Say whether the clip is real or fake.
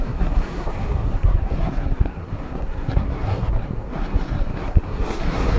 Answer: fake